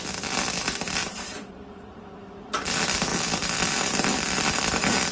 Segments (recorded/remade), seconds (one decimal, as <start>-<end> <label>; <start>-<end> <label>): 0.0-1.0 recorded; 1.0-2.5 remade; 2.5-5.1 recorded